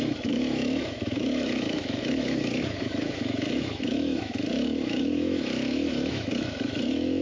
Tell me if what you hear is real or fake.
fake